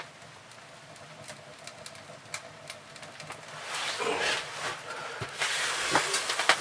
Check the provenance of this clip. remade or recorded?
recorded